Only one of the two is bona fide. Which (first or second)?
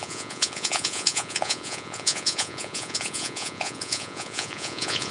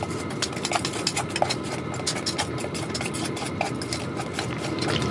second